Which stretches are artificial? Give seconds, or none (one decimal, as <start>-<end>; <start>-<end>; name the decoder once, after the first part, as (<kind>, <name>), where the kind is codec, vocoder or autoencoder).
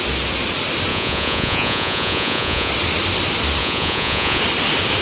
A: 0.9-2.7 (vocoder, Vocos); 3.6-4.4